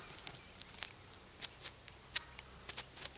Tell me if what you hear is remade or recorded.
recorded